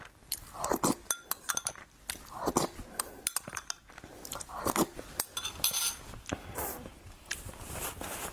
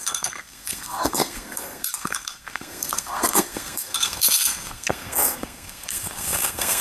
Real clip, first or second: first